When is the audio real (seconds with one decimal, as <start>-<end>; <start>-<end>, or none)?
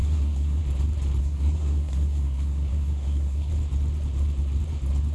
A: 0.6-1.2; 3.5-5.1